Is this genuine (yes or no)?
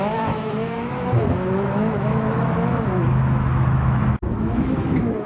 no